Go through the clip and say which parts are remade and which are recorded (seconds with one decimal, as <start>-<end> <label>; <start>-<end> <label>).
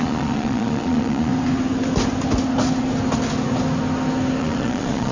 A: 0.0-1.3 remade; 1.3-4.4 recorded; 4.4-5.1 remade